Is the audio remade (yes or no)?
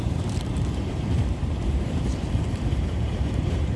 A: yes